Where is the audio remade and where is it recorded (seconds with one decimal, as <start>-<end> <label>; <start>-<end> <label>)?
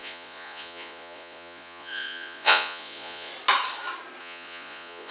0.0-3.3 remade; 3.3-4.2 recorded; 4.2-5.1 remade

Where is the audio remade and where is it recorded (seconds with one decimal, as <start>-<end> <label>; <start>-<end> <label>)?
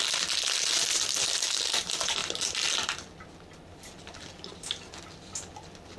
0.0-2.2 recorded; 2.2-6.0 remade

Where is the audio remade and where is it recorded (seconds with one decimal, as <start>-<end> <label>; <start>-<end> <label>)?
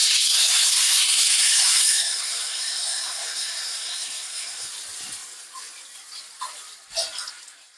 0.0-4.7 remade; 4.7-7.8 recorded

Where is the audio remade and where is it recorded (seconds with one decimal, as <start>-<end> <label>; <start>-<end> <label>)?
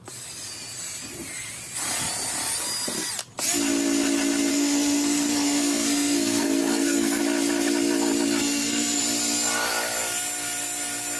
0.0-4.5 recorded; 4.5-7.2 remade; 7.2-8.4 recorded; 8.4-9.0 remade; 9.0-11.2 recorded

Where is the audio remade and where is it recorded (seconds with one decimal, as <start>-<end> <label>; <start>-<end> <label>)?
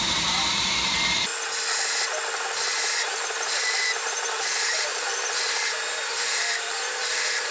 0.0-1.3 remade; 1.3-3.0 recorded; 3.0-7.5 remade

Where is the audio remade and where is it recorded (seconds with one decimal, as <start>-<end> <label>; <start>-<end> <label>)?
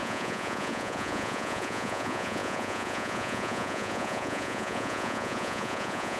0.0-6.2 remade